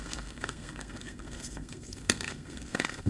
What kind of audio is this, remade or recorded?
remade